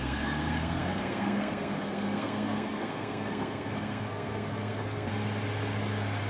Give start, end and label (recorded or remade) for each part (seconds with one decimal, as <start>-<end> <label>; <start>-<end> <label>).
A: 0.0-5.1 remade; 5.1-6.3 recorded